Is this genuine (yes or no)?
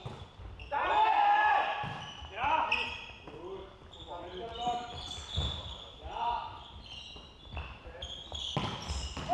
yes